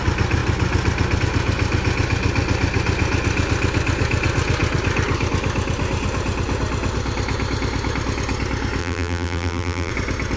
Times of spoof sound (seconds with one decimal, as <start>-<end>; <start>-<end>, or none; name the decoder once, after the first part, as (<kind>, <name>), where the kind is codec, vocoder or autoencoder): 8.8-9.9 (vocoder, BigVGAN v2)